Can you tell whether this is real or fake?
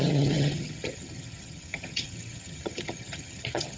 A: fake